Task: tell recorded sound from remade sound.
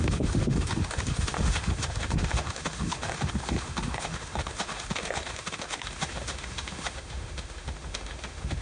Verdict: remade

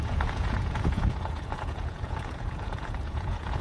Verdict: remade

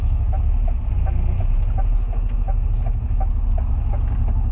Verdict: recorded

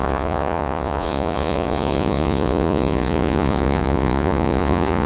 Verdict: remade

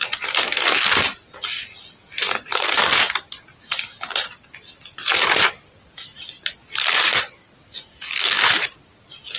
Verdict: recorded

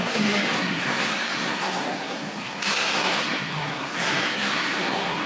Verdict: remade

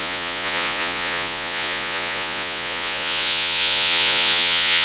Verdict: remade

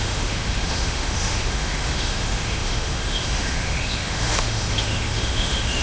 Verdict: remade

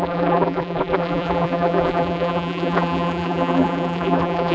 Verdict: remade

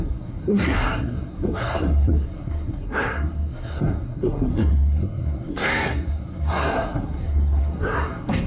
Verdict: remade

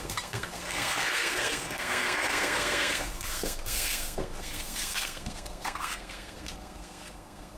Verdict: remade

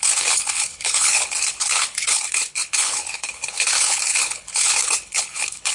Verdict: remade